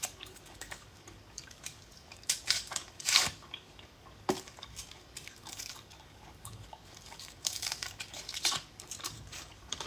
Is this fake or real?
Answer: fake